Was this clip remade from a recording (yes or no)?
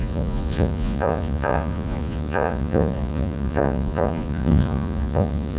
yes